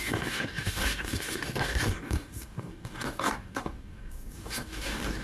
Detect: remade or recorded remade